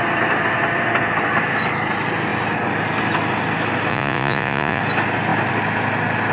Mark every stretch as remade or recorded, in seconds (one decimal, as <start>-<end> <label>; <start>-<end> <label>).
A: 0.0-3.9 recorded; 3.9-4.8 remade; 4.8-6.3 recorded